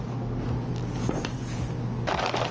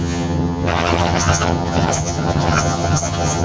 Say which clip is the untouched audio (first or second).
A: first